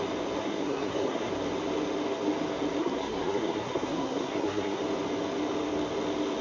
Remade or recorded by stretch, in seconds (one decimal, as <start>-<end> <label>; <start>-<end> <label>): 0.0-0.4 recorded; 0.4-1.3 remade; 1.3-2.8 recorded; 2.8-4.8 remade; 4.8-6.4 recorded